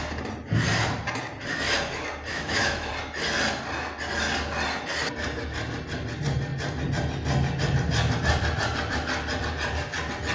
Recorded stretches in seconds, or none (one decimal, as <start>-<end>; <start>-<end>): 0.0-2.3; 2.9-10.3